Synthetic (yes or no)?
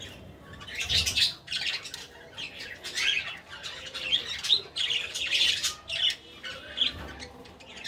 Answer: no